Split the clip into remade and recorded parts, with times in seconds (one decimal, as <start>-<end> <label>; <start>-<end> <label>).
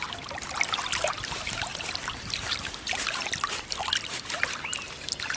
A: 0.0-1.7 recorded; 1.7-4.3 remade; 4.3-5.4 recorded